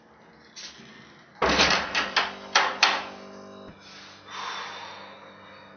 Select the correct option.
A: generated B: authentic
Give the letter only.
B